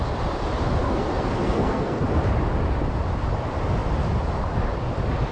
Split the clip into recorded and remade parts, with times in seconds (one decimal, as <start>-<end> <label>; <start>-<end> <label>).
0.0-0.8 recorded; 0.8-2.0 remade; 2.0-5.3 recorded